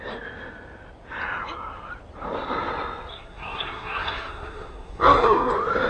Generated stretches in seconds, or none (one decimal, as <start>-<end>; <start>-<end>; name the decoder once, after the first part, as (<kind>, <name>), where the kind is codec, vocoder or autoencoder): 3.1-5.5 (codec, SNAC)

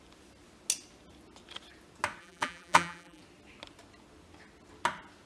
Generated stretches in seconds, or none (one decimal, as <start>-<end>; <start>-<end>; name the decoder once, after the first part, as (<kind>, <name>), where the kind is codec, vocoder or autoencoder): 2.2-3.2 (vocoder, BigVGAN v2)

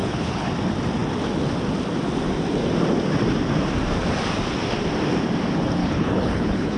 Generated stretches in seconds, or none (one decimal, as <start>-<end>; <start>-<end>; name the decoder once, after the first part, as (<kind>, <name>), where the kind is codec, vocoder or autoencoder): 0.0-0.5 (codec, HILCodec); 5.8-6.8

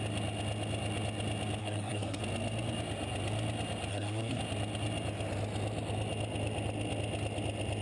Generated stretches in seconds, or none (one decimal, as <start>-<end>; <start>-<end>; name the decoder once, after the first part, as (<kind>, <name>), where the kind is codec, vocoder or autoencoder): 1.6-2.2 (codec, SNAC); 3.9-4.4

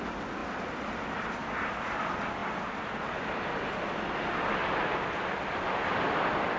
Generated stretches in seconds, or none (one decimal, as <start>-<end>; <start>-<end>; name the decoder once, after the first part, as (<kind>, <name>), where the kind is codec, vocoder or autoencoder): 0.4-1.7 (vocoder, BigVGAN v2)

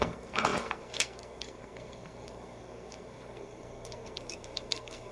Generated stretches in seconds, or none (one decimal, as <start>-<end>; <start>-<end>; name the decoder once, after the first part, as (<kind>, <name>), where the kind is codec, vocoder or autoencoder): 0.0-5.1 (codec, SNAC)

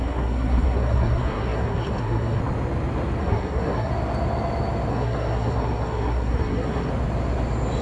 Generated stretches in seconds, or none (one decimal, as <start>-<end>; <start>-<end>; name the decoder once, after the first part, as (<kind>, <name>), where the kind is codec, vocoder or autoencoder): 0.0-2.4 (codec, SNAC); 3.2-3.9; 4.9-6.9

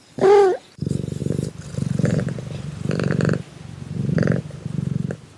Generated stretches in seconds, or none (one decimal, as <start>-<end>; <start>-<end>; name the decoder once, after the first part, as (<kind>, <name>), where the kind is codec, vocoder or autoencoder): none